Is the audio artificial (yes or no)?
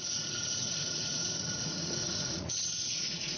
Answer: yes